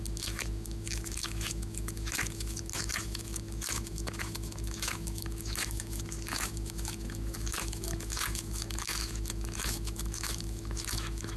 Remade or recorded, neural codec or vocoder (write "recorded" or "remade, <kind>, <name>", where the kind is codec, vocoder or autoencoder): remade, autoencoder, DAC-VAE